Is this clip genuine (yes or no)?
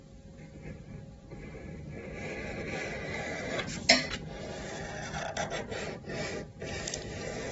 yes